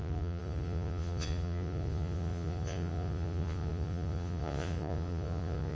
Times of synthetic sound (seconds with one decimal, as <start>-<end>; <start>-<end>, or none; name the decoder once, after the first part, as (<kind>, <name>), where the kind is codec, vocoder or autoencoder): 0.0-5.7 (vocoder, Vocos)